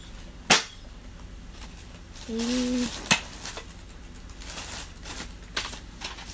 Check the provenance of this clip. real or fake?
real